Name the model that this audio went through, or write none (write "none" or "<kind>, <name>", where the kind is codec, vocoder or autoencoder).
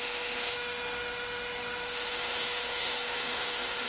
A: autoencoder, DAC-VAE